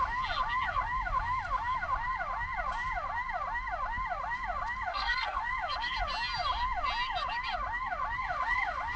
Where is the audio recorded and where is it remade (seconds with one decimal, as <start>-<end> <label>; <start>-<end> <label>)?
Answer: 0.0-4.9 recorded; 4.9-5.4 remade; 5.4-9.0 recorded